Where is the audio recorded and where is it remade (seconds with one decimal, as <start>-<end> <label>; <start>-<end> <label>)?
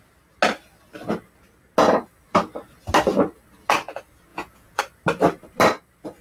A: 0.0-4.3 recorded; 4.3-4.8 remade; 4.8-6.2 recorded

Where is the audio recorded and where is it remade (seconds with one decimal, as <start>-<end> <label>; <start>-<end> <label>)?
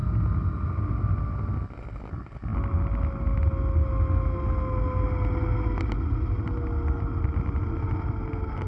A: 0.0-8.7 recorded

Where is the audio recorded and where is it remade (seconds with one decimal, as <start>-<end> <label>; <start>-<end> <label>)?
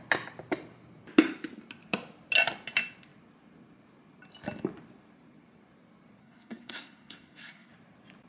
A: 0.0-6.2 recorded; 6.2-7.7 remade; 7.7-8.3 recorded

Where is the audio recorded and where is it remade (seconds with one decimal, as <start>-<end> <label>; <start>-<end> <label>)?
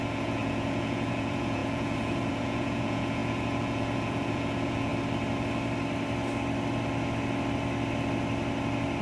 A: 0.0-4.9 remade; 4.9-9.0 recorded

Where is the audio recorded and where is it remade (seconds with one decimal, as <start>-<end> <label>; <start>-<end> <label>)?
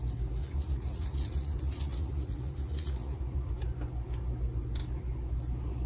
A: 0.0-0.4 recorded; 0.4-3.5 remade; 3.5-5.9 recorded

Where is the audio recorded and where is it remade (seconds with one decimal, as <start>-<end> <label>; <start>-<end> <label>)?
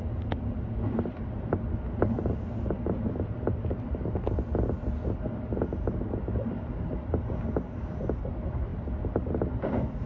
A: 0.0-10.1 recorded